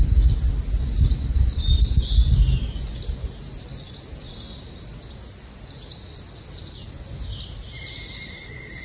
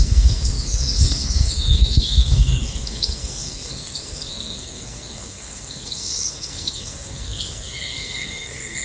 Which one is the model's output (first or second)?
second